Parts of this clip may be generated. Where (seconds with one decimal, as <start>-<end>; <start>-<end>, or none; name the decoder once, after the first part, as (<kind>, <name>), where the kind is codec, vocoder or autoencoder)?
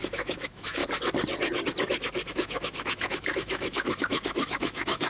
0.0-0.8 (autoencoder, DAC-VAE); 2.3-5.1